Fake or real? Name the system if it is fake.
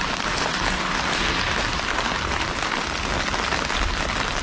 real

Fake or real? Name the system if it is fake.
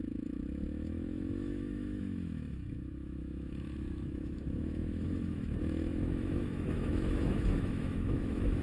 fake, autoencoder, DAC-VAE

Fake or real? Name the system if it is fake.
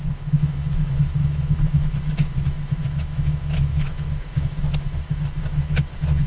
fake, autoencoder, DAC-VAE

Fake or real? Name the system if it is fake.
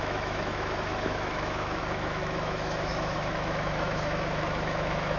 fake, autoencoder, DAC-VAE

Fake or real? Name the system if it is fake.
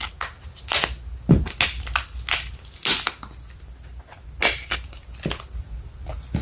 real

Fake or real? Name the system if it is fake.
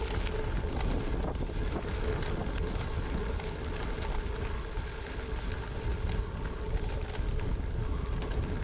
real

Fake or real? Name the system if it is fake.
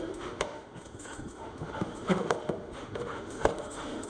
fake, autoencoder, DAC-VAE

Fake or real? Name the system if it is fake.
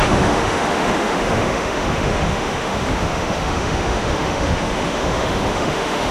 fake, autoencoder, DAC-VAE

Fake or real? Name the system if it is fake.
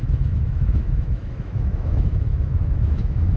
fake, autoencoder, DAC-VAE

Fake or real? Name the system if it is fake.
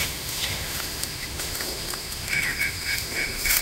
fake, autoencoder, DAC-VAE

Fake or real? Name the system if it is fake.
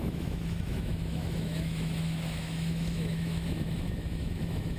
fake, autoencoder, DAC-VAE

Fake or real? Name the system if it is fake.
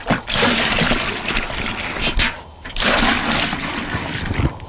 real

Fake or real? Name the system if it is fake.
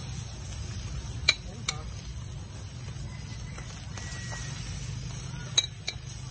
real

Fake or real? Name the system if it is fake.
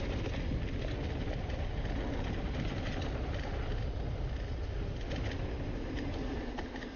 real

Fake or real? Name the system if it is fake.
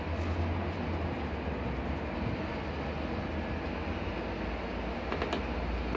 real